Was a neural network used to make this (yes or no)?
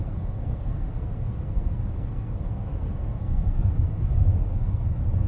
yes